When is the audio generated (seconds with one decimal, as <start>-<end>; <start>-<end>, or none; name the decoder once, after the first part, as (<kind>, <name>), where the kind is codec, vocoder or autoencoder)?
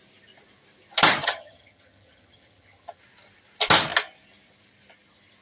1.2-3.0 (vocoder, HiFi-GAN)